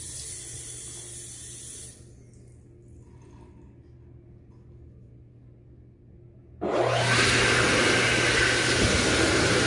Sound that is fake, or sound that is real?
real